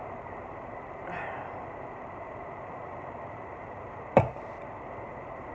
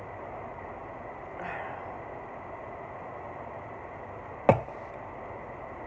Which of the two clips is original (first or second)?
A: second